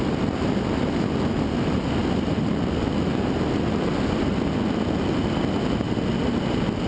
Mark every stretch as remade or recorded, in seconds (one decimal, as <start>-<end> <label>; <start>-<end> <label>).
0.0-6.9 recorded